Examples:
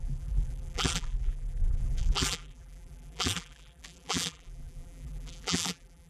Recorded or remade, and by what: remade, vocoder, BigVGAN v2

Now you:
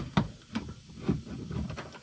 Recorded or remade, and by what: recorded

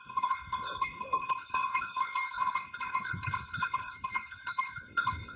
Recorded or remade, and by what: remade, codec, HILCodec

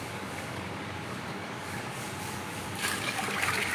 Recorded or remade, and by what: remade, codec, DAC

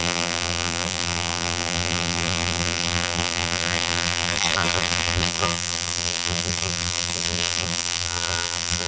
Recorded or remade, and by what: remade, vocoder, BigVGAN v2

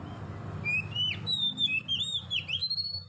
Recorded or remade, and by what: recorded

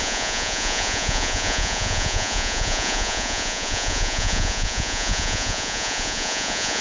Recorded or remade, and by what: remade, vocoder, Vocos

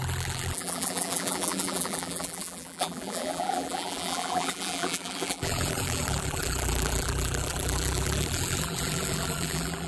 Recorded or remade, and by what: remade, vocoder, BigVGAN v2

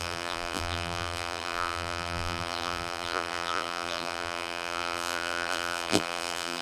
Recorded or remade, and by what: remade, vocoder, BigVGAN v2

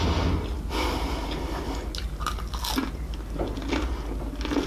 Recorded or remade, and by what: recorded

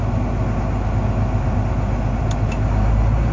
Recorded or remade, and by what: recorded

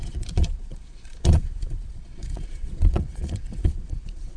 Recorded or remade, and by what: remade, vocoder, Vocos